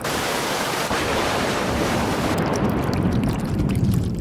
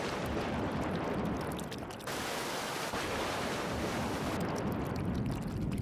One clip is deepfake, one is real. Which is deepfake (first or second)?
first